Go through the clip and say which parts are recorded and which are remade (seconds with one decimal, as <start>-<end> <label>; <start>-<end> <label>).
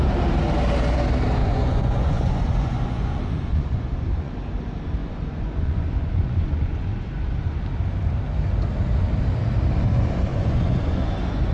0.0-1.4 recorded; 1.4-4.3 remade; 4.3-5.0 recorded; 5.0-7.6 remade; 7.6-10.3 recorded; 10.3-11.5 remade